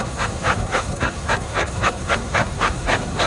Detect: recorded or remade remade